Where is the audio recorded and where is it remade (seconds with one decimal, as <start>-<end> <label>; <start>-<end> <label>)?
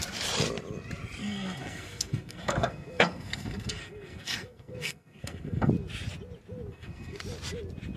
0.0-1.2 recorded; 1.2-5.7 remade; 5.7-6.7 recorded; 6.7-7.2 remade; 7.2-8.0 recorded